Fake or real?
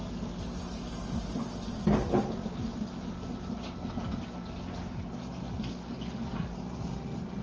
real